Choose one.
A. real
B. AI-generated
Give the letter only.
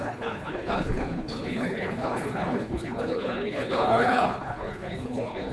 B